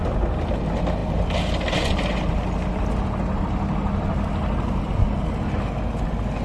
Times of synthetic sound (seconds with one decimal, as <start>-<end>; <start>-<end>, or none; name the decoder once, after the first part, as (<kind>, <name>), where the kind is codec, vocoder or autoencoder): none

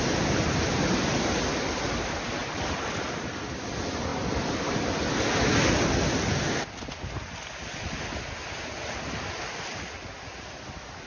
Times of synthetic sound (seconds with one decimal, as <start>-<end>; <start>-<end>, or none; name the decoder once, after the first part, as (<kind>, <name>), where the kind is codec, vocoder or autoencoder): none